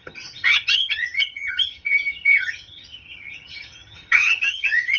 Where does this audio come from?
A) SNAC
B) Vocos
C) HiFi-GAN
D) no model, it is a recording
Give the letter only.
C